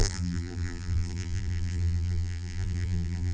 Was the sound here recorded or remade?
remade